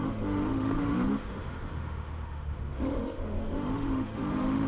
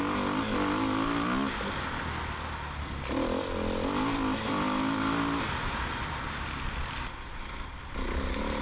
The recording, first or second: second